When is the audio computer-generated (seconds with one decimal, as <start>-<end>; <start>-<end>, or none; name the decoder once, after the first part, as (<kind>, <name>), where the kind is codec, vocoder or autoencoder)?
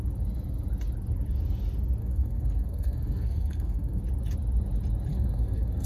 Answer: 2.0-4.0 (codec, SNAC); 5.1-5.9